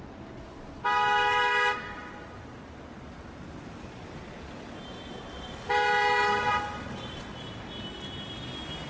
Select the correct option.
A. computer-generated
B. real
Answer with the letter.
B